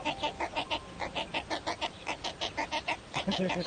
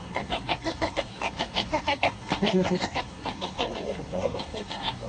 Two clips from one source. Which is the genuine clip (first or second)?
first